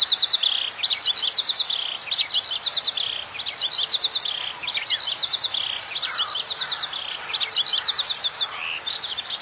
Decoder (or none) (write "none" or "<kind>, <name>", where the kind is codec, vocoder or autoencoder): none